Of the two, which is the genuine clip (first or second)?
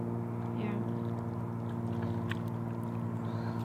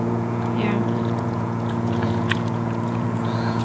first